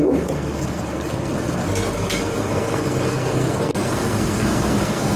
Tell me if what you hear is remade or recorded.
remade